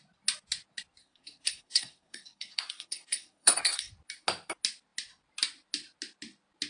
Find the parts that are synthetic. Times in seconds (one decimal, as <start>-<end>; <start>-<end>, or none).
1.0-3.9

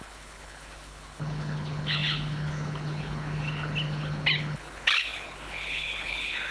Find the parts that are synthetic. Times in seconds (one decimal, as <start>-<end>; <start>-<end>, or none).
0.0-6.5

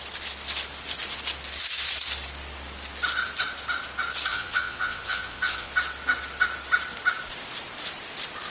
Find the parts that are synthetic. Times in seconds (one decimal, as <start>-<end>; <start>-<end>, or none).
4.3-5.7

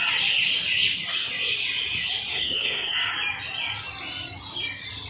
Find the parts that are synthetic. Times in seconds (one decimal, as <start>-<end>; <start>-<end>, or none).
2.3-2.9

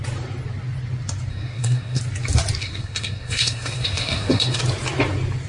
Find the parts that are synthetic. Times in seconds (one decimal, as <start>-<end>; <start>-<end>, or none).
1.3-2.0; 2.6-4.6

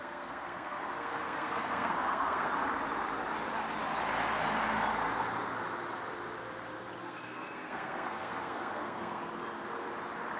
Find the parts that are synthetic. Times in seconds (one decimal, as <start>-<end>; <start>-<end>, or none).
0.0-2.5; 7.0-9.2

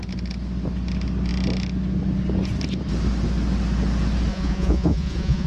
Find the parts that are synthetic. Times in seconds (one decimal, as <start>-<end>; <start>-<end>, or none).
4.3-5.5

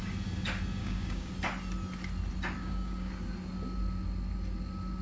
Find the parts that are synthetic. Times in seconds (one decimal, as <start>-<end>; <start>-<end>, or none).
0.8-1.3; 2.6-3.1